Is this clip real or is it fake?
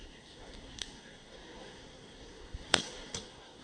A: fake